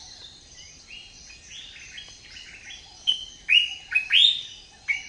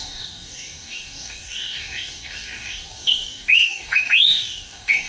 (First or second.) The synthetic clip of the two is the second